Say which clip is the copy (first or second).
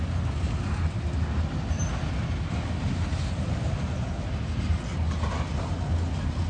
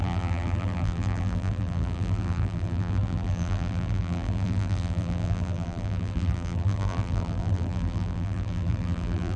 second